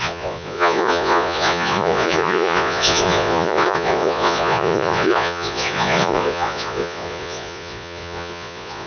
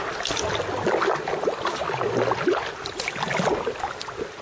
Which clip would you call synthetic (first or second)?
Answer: first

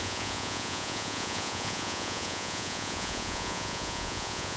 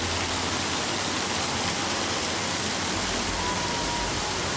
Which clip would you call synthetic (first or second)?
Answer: first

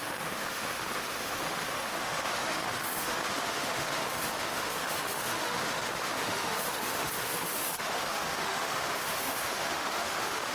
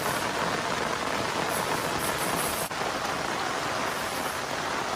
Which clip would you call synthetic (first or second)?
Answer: first